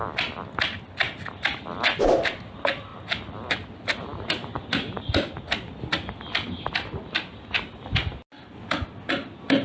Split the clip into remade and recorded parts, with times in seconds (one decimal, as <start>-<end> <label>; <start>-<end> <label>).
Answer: 0.0-9.6 recorded